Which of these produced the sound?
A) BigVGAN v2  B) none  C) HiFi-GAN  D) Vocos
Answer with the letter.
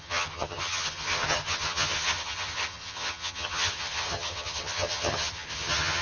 C